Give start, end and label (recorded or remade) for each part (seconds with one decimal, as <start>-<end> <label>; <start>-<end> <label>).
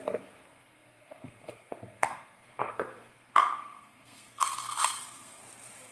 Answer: 0.0-5.4 remade; 5.4-5.9 recorded